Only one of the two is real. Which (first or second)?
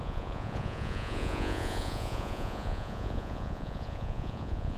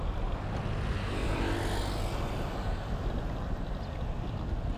second